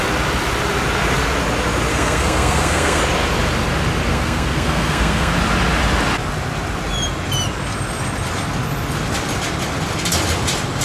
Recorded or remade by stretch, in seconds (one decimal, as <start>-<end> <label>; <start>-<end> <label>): 0.0-1.9 recorded; 1.9-3.0 remade; 3.0-4.1 recorded; 4.1-5.3 remade; 5.3-10.8 recorded